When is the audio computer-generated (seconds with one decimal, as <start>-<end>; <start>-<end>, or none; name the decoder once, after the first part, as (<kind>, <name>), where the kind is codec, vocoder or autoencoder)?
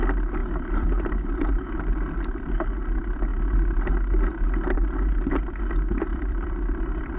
0.4-1.0 (vocoder, BigVGAN v2); 6.1-7.2